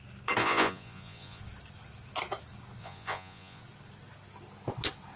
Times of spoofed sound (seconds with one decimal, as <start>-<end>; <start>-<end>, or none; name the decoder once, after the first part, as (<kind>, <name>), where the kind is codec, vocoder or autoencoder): 0.4-1.4 (vocoder, Vocos); 2.8-3.6

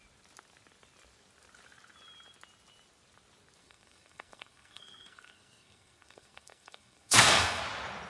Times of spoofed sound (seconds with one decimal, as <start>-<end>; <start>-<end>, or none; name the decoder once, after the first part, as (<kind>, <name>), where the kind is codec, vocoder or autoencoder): 3.6-7.6 (codec, SNAC)